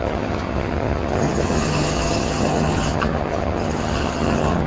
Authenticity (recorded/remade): remade